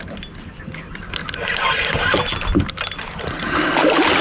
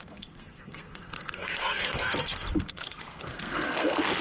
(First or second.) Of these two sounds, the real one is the first